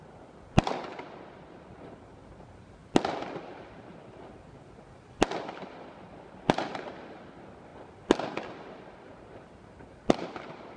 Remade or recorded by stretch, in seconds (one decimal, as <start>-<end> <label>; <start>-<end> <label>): 0.0-10.8 recorded